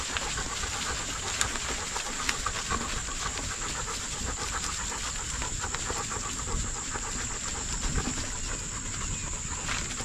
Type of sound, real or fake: real